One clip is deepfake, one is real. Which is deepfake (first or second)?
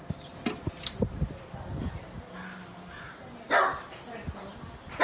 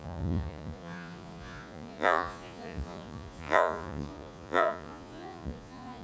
second